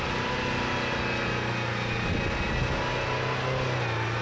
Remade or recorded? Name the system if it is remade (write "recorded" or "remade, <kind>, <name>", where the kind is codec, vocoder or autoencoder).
recorded